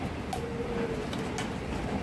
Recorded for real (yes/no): yes